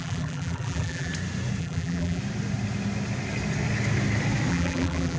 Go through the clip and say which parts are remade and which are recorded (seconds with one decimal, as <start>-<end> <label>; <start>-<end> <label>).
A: 0.0-1.1 remade; 1.1-1.6 recorded; 1.6-2.2 remade; 2.2-4.5 recorded; 4.5-5.2 remade